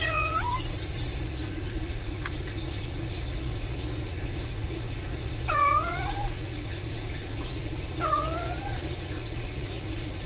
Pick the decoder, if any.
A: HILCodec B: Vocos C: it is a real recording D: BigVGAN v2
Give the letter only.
B